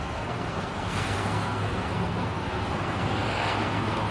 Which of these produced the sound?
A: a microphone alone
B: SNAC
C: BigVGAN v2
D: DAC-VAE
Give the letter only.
B